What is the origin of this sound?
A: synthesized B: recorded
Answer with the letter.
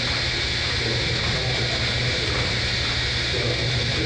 B